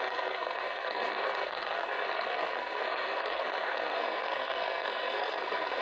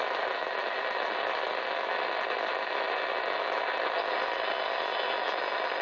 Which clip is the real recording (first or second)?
second